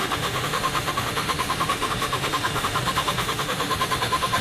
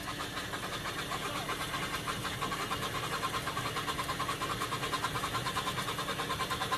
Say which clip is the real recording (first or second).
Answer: second